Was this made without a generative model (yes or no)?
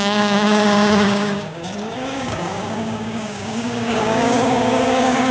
no